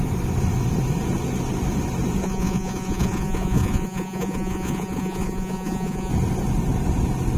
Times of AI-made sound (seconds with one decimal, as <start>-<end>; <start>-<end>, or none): 2.2-6.1